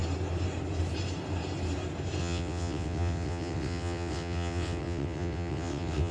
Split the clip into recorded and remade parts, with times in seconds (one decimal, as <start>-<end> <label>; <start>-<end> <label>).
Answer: 0.0-2.2 recorded; 2.2-6.1 remade